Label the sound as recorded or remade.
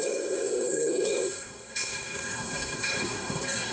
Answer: remade